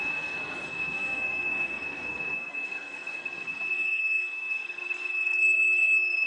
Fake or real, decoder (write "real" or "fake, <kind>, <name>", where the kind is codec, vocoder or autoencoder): fake, codec, SNAC